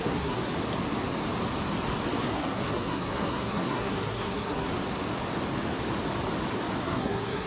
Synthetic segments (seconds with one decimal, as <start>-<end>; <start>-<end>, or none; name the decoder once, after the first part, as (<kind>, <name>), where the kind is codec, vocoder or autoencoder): 0.0-0.4 (codec, SNAC); 2.2-4.7; 6.8-7.5